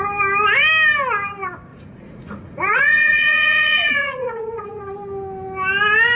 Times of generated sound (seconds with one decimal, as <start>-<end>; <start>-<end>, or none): 1.7-4.8